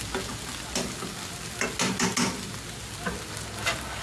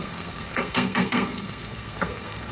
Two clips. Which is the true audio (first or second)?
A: first